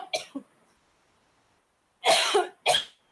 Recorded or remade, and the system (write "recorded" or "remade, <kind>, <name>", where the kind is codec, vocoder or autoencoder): recorded